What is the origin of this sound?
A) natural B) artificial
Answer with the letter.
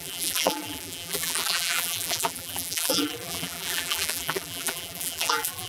B